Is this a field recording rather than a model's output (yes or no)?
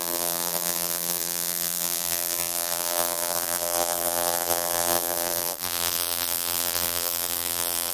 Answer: no